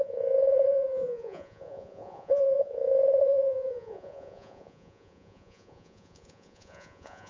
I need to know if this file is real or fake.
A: fake